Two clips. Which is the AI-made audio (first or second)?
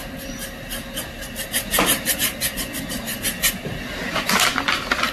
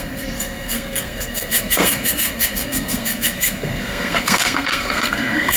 second